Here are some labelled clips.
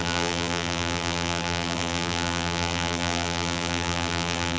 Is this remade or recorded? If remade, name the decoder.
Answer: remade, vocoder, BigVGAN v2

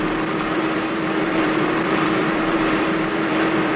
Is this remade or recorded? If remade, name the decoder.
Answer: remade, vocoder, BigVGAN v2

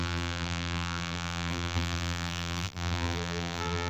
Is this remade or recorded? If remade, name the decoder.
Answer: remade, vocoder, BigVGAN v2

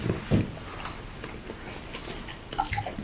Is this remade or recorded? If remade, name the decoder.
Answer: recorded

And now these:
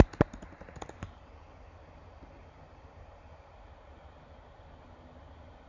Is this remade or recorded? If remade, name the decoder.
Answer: recorded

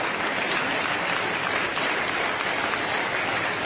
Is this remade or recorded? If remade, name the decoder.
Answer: recorded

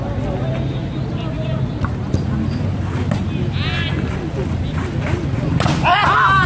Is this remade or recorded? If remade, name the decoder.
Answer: recorded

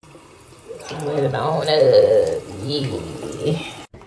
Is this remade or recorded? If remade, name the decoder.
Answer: remade, vocoder, BigVGAN v2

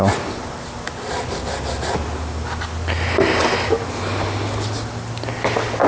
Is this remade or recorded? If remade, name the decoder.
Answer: recorded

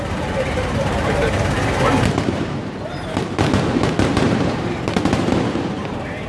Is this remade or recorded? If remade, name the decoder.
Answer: remade, vocoder, BigVGAN v2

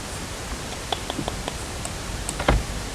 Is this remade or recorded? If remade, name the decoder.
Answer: recorded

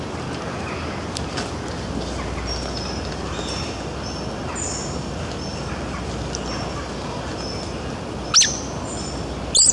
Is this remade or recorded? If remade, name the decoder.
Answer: recorded